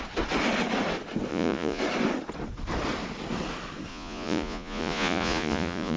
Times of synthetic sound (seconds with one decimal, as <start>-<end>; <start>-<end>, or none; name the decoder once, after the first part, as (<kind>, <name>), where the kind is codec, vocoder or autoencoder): 1.3-1.8 (vocoder, Vocos); 3.9-6.0